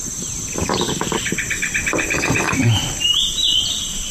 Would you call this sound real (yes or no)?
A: no